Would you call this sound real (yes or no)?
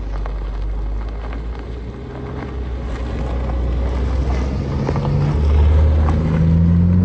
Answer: yes